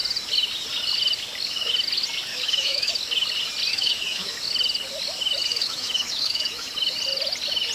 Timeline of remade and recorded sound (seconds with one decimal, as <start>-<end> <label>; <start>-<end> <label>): 0.0-2.3 recorded; 2.3-2.9 remade; 2.9-3.7 recorded; 3.7-4.4 remade; 4.4-5.5 recorded; 5.5-6.7 remade; 6.7-7.7 recorded